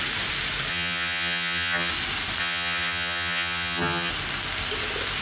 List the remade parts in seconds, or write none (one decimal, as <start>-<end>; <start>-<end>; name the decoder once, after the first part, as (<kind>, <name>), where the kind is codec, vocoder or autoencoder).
0.7-1.9 (vocoder, HiFi-GAN); 2.4-4.1